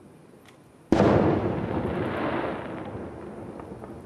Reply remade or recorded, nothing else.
recorded